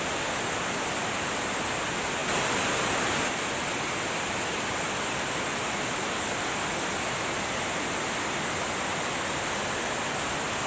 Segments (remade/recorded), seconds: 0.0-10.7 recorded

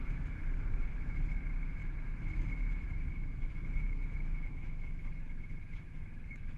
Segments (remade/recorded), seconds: 0.0-6.6 remade

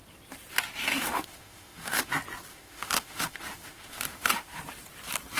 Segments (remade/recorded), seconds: 0.0-0.9 recorded; 0.9-2.1 remade; 2.1-2.5 recorded; 2.5-4.6 remade; 4.6-5.4 recorded